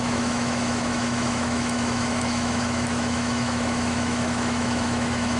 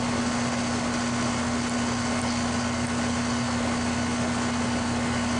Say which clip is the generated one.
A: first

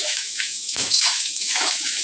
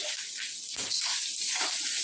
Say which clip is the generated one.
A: first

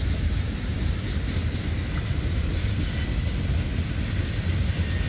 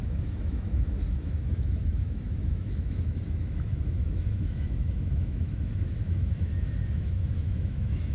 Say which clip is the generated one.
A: second